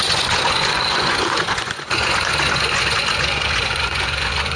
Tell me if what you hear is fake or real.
fake